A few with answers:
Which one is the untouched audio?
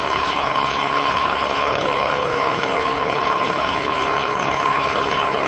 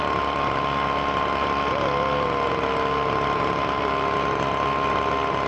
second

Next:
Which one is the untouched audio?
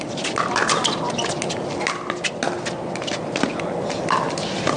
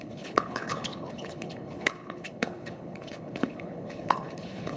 first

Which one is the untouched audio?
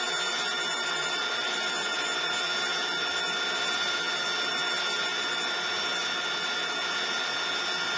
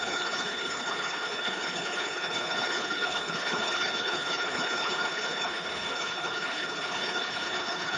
first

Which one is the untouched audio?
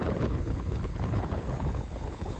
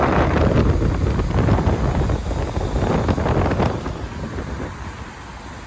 second